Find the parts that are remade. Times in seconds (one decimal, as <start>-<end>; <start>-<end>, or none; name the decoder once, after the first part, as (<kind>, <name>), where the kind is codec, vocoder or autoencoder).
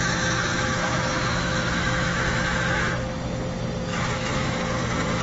0.5-2.7 (autoencoder, DAC-VAE); 3.9-4.6